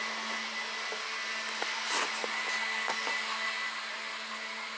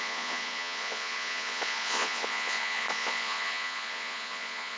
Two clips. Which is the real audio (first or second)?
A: first